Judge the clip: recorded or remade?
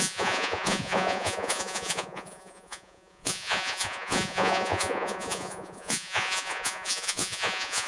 remade